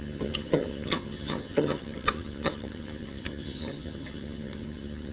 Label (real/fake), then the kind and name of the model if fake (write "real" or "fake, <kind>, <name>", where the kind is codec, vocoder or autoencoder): fake, vocoder, HiFi-GAN